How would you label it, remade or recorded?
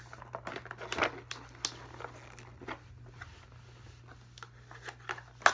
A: recorded